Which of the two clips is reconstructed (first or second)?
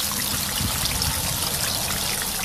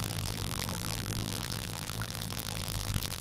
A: second